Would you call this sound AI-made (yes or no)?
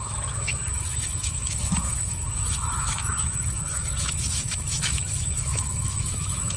yes